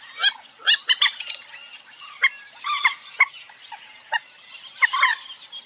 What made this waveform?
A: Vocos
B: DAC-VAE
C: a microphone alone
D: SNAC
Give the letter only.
C